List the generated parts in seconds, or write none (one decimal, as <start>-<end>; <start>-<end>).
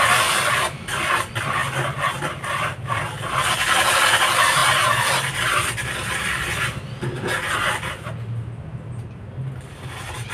0.0-1.6; 2.3-4.6; 9.7-10.3